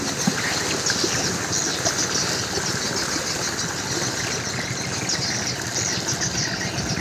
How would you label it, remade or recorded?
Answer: recorded